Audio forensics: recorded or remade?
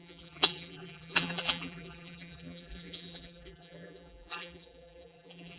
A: remade